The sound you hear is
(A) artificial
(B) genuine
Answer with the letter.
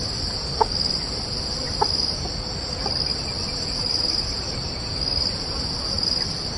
B